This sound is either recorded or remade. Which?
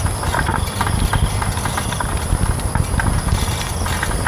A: recorded